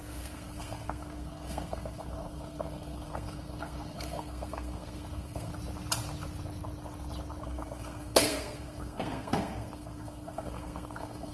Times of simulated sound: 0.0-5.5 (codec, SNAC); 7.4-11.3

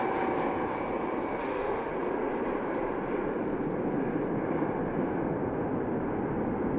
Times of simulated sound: 1.4-1.9 (autoencoder, DAC-VAE)

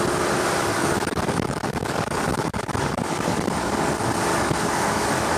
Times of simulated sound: 0.7-3.9 (codec, DAC); 4.3-5.4

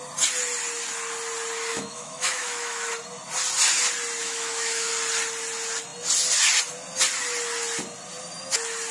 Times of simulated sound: 1.7-2.9 (autoencoder, DAC-VAE); 4.2-4.9

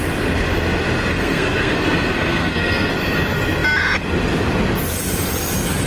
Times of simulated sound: 1.1-2.9 (codec, SNAC)

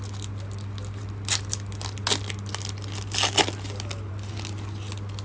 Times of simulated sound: none

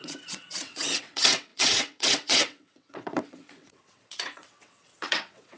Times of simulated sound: 0.0-5.6 (vocoder, WaveNeXt)

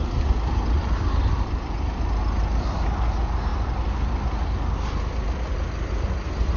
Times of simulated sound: none